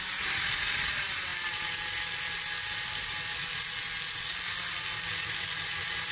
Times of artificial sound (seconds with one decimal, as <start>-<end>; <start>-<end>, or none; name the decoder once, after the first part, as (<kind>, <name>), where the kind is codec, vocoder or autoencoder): none